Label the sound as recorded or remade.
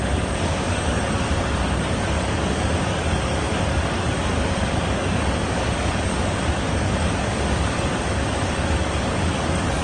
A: remade